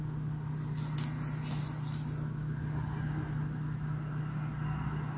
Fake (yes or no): no